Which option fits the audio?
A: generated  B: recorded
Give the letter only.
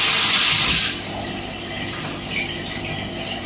B